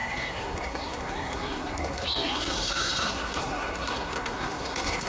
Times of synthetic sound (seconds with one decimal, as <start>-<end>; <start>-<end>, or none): 0.0-5.1